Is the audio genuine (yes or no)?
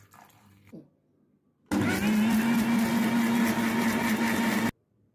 yes